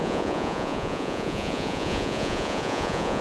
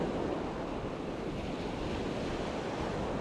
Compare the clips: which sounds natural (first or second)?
second